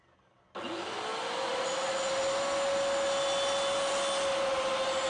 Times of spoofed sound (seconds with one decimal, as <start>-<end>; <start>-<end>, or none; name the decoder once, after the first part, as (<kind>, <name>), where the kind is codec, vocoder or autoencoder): none